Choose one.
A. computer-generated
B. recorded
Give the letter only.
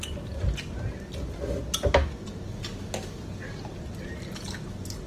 B